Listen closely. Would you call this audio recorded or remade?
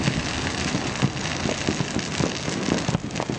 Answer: recorded